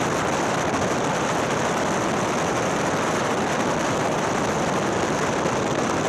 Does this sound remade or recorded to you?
recorded